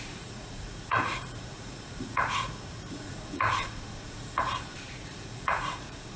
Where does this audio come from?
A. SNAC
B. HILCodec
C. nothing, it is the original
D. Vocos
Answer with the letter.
D